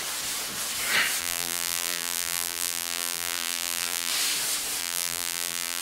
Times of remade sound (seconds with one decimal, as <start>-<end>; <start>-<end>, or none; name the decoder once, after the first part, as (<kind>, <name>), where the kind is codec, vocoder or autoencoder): 1.2-4.1 (vocoder, BigVGAN v2); 4.8-5.8